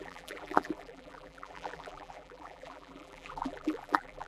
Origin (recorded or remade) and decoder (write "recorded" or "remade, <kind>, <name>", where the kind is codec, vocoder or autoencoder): remade, vocoder, BigVGAN v2